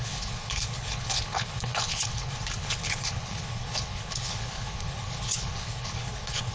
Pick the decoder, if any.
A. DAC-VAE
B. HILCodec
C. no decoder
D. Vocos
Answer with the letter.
B